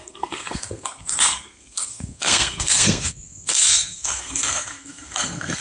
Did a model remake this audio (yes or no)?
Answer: yes